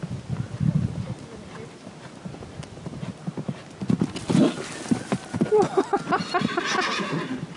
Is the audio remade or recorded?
recorded